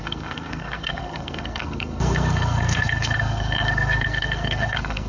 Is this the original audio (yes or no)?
no